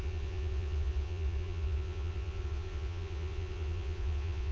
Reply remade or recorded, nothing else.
remade